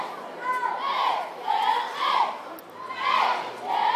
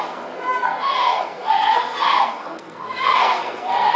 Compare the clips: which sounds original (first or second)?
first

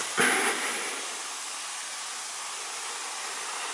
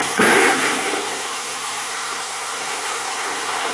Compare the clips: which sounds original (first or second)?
first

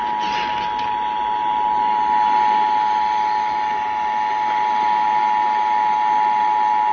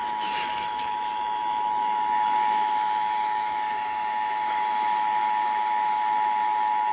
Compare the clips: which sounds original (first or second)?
first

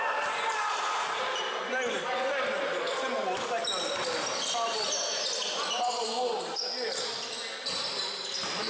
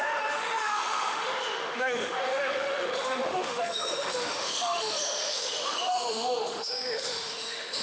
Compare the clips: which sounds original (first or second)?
first